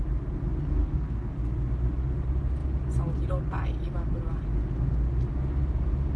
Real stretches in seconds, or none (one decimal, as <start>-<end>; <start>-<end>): 0.0-0.8; 1.4-6.2